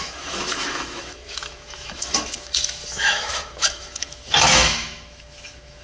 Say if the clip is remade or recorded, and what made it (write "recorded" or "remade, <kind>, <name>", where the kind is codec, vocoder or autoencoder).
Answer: remade, autoencoder, DAC-VAE